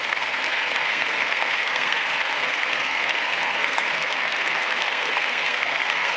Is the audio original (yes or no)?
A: no